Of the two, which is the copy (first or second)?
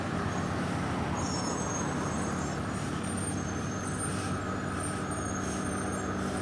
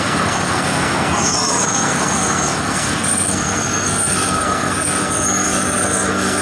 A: second